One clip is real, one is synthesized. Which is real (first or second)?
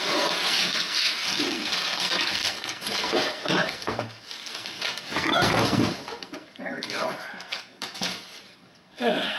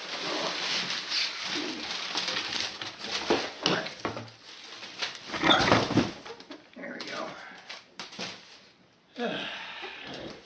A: second